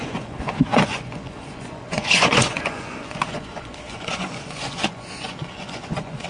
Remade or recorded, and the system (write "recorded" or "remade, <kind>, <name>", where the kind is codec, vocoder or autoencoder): remade, vocoder, Vocos